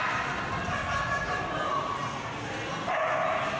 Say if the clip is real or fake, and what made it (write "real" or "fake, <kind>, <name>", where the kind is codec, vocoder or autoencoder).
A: real